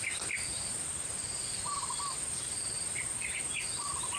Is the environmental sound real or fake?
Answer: real